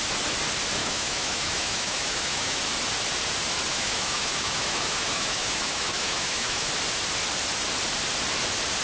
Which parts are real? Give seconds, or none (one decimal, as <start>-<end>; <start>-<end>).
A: 0.0-0.8; 2.6-3.7; 6.7-8.8

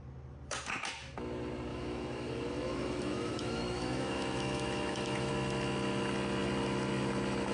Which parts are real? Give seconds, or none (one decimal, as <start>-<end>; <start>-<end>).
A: 0.0-1.7; 5.3-7.5

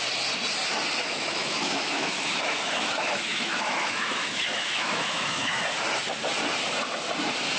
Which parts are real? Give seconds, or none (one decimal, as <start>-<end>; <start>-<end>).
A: 0.0-1.0; 5.6-7.6

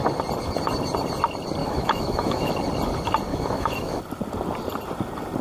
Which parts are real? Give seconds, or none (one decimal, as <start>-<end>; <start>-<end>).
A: 0.0-1.6; 2.5-3.3; 4.0-5.4

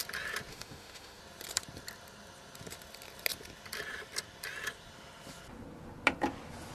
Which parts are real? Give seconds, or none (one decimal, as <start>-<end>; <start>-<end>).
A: 0.0-0.5; 1.2-6.7

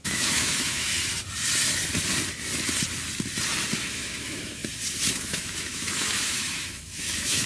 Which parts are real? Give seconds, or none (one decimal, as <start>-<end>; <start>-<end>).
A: 0.9-3.9; 4.6-5.2